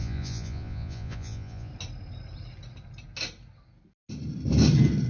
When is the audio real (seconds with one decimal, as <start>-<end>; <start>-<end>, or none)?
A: 1.7-5.1